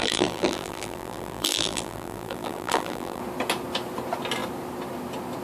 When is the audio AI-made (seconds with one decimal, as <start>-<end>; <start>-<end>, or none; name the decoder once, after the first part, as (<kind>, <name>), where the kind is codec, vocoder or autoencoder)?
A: 0.0-3.2 (vocoder, BigVGAN v2)